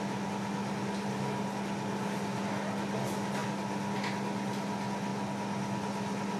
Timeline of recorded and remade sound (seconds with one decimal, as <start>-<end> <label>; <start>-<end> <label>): 0.0-6.4 recorded